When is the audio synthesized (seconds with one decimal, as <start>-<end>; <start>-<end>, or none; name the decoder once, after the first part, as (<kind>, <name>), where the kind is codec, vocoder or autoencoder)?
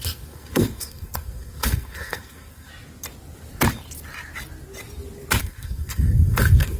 0.0-2.7 (codec, SNAC); 5.4-6.8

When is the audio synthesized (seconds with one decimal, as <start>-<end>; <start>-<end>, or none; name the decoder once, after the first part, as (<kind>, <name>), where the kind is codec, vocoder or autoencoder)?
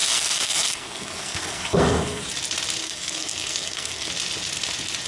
0.0-2.2 (codec, SNAC); 2.8-4.1